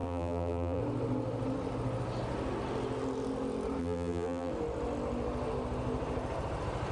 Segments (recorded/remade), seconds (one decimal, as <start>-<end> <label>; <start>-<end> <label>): 0.0-0.8 remade; 0.8-3.8 recorded; 3.8-4.5 remade; 4.5-6.9 recorded